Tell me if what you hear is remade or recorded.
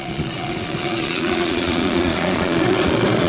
remade